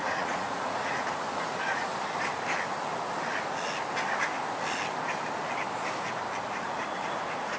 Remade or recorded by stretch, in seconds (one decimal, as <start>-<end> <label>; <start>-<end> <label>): 0.0-1.9 remade; 1.9-6.5 recorded; 6.5-7.6 remade